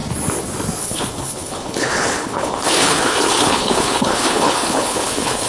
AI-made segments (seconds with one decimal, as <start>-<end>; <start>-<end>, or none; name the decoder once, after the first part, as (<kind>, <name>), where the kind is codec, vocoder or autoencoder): 0.8-5.5 (codec, HILCodec)